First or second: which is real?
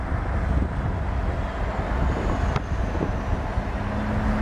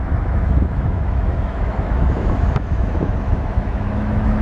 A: first